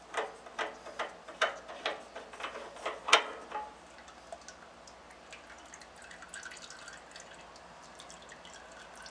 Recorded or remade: recorded